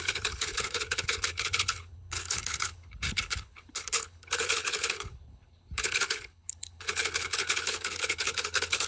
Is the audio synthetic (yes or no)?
yes